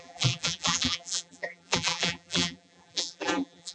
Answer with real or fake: fake